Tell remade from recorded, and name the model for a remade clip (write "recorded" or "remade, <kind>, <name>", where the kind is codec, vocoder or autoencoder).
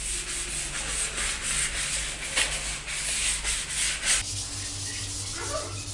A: recorded